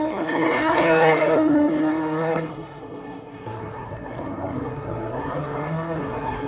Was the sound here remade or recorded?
remade